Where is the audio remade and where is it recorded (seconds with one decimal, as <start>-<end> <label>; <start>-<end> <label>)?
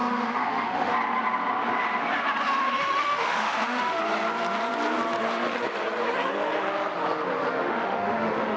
0.0-0.9 remade; 0.9-2.7 recorded; 2.7-4.0 remade; 4.0-7.5 recorded; 7.5-8.6 remade